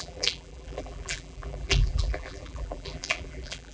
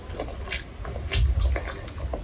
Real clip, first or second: second